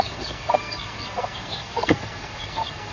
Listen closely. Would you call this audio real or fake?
fake